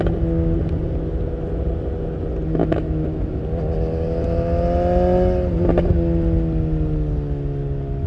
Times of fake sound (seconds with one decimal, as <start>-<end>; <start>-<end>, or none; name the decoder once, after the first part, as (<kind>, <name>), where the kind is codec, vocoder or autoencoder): 2.6-3.4 (autoencoder, DAC-VAE)